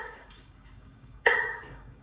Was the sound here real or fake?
fake